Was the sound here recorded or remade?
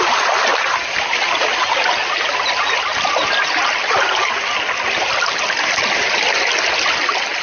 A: recorded